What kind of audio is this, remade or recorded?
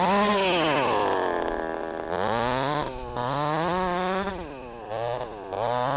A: recorded